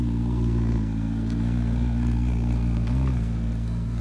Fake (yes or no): yes